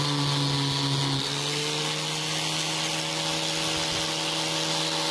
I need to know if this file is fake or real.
real